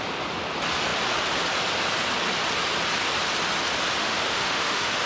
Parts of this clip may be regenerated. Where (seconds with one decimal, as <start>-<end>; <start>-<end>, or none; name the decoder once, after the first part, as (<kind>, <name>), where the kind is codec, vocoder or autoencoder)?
4.0-5.1 (autoencoder, DAC-VAE)